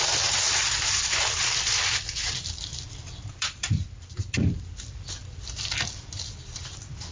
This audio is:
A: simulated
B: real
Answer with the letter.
A